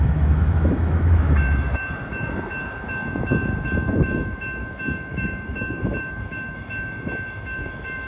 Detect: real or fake fake